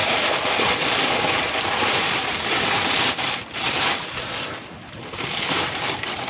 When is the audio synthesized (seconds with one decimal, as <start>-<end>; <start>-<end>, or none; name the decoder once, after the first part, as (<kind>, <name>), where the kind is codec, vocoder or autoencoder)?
none